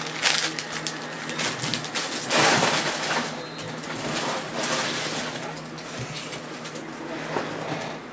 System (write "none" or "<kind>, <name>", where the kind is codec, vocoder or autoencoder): none